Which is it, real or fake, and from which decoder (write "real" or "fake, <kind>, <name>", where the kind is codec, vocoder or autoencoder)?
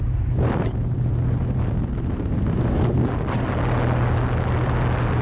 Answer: real